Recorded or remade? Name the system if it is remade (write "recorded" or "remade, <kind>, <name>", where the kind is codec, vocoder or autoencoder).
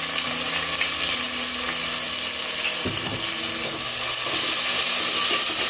recorded